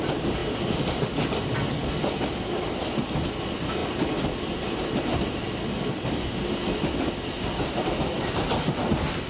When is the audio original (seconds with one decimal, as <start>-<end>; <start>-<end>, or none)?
0.0-6.6; 7.1-9.3